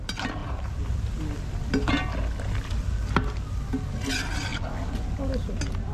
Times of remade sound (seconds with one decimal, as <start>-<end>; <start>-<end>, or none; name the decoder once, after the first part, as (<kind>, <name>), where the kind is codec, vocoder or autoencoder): none

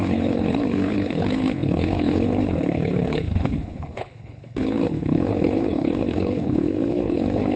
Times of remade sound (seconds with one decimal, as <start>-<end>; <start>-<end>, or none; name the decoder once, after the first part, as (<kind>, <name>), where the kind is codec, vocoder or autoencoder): 0.0-7.6 (codec, HILCodec)